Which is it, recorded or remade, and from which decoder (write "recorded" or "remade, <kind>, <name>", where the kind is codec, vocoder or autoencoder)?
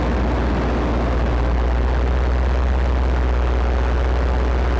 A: recorded